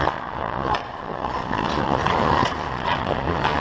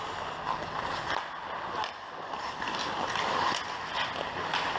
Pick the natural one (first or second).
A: second